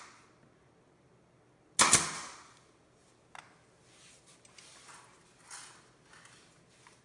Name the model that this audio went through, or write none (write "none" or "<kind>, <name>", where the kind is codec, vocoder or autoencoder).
none